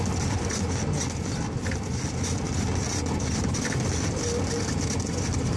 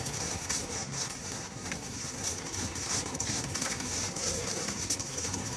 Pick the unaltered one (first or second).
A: first